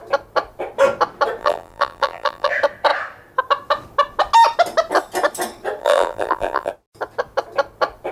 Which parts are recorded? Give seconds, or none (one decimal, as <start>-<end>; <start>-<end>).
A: 0.0-1.4; 2.5-5.8; 6.7-8.1